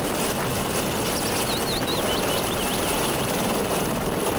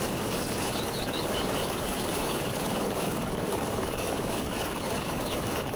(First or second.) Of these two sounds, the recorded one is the first